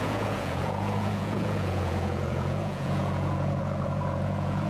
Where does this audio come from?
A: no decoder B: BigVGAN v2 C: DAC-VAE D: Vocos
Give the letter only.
D